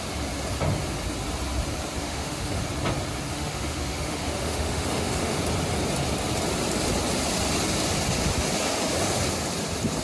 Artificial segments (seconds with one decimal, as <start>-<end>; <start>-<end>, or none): 2.0-2.6; 3.3-5.4